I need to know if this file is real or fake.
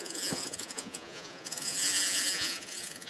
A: fake